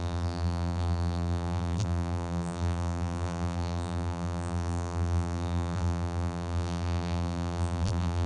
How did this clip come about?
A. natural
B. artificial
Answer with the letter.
B